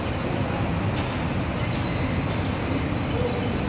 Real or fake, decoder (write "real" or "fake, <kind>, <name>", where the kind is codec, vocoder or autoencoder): real